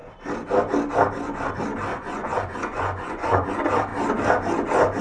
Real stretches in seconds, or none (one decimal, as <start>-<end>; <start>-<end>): 0.0-1.9; 3.5-5.0